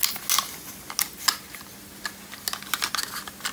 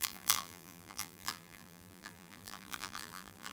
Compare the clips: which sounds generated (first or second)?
second